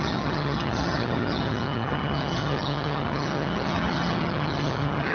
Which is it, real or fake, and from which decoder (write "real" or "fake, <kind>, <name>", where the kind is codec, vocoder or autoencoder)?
fake, vocoder, HiFi-GAN